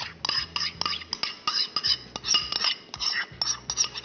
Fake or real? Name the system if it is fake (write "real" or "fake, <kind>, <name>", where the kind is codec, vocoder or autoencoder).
real